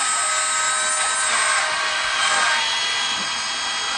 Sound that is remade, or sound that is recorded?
recorded